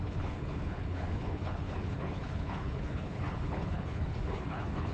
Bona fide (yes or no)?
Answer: no